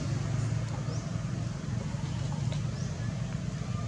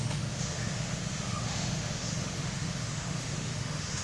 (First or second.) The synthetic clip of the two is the second